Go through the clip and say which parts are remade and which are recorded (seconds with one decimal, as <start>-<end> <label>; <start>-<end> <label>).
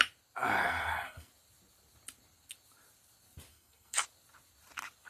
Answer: 0.0-0.6 recorded; 0.6-1.3 remade; 1.3-3.5 recorded; 3.5-4.0 remade; 4.0-5.1 recorded